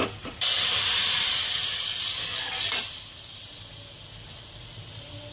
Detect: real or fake real